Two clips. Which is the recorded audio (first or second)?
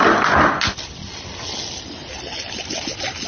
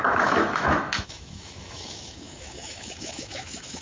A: first